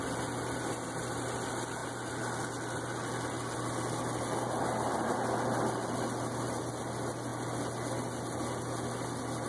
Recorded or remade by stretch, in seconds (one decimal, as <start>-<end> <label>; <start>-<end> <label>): 0.0-9.5 recorded